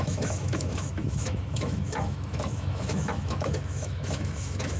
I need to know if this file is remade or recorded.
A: remade